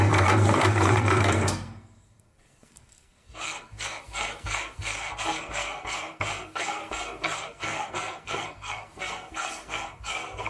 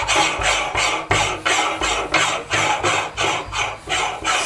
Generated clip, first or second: first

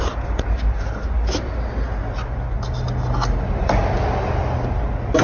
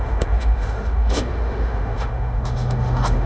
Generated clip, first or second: second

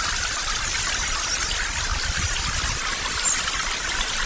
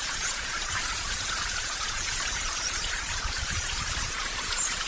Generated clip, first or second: second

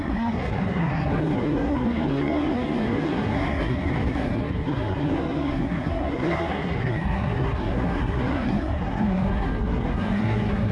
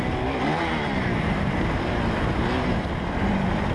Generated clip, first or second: first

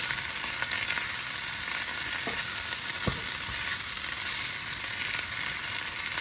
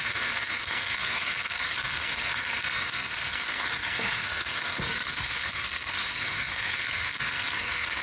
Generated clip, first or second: second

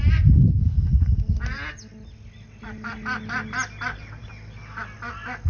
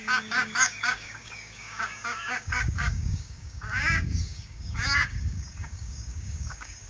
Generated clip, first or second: second